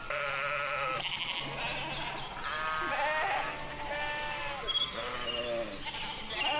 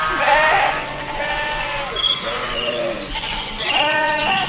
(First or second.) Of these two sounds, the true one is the first